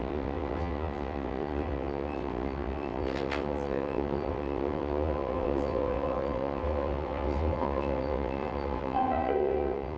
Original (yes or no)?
no